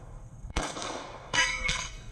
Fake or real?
fake